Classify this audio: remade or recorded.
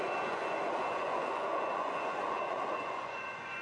remade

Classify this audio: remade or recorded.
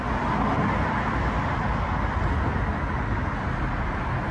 recorded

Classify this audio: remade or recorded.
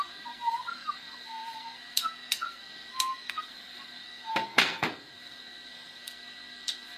remade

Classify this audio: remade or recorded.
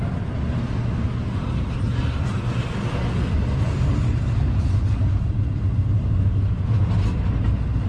recorded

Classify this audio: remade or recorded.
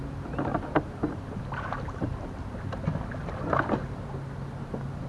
recorded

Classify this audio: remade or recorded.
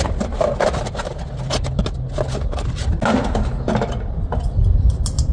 recorded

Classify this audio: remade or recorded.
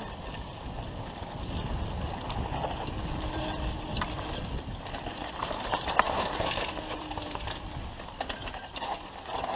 recorded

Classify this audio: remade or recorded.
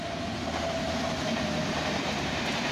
recorded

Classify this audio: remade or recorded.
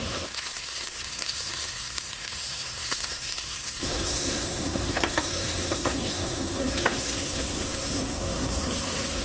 remade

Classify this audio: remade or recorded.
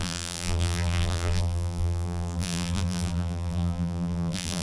remade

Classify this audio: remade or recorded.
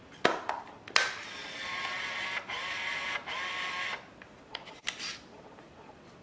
recorded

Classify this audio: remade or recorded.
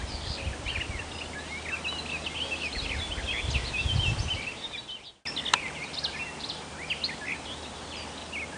recorded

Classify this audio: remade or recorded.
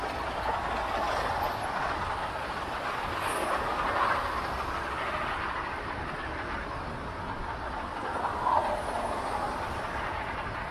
recorded